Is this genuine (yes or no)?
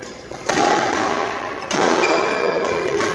no